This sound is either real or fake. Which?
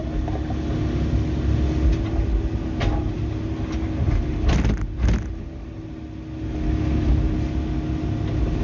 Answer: real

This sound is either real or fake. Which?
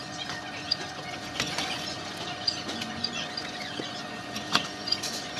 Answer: fake